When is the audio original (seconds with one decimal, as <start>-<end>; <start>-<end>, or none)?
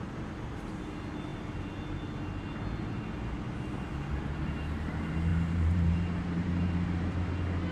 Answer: 0.0-5.3; 7.3-7.7